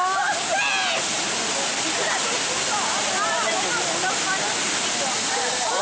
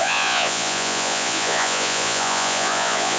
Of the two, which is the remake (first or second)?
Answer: second